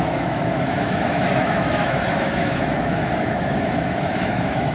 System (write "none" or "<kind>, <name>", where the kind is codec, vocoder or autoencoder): autoencoder, DAC-VAE